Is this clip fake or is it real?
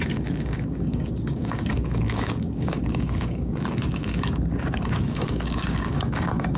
fake